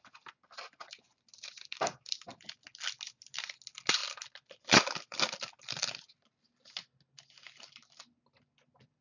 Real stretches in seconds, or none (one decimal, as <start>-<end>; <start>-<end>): 0.0-9.0